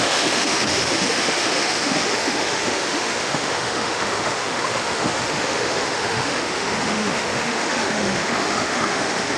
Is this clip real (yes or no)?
no